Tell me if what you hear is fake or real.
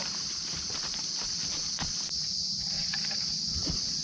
real